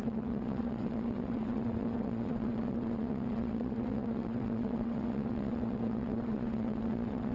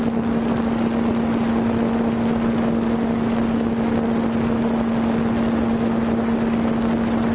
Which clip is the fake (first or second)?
first